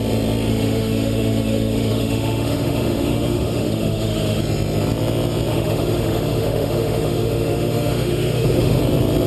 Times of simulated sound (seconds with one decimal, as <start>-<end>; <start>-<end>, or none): 0.5-4.4; 5.5-8.8